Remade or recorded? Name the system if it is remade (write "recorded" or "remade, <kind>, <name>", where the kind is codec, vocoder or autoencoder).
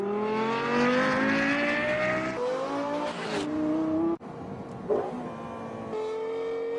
recorded